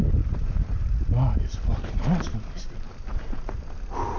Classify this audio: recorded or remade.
recorded